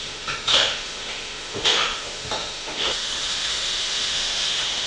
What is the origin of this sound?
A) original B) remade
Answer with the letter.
B